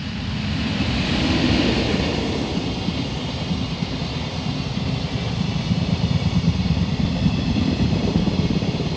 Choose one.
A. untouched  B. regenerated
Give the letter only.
B